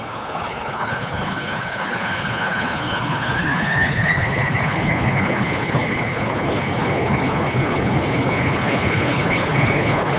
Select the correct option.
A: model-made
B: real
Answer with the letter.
A